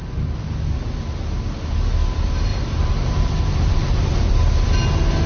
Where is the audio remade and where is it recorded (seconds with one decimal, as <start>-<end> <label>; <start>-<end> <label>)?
0.0-2.5 recorded; 2.5-4.4 remade; 4.4-5.3 recorded